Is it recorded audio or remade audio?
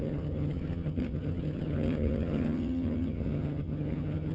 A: remade